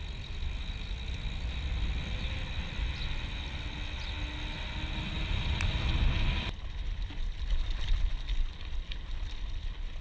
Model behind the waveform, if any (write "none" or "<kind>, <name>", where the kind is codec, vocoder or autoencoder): none